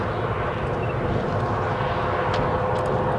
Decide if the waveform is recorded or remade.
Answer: recorded